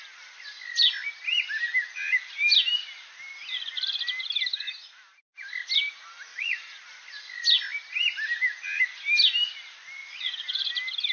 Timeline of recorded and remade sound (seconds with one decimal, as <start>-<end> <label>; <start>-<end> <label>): 0.0-6.3 recorded; 6.3-6.8 remade; 6.8-10.0 recorded; 10.0-10.7 remade; 10.7-11.1 recorded